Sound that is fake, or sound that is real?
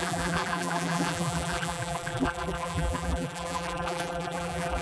fake